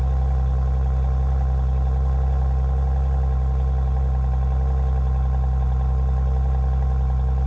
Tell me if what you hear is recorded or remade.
recorded